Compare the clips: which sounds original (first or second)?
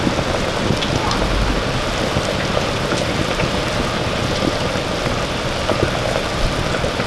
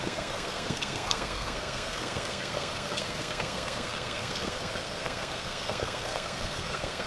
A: first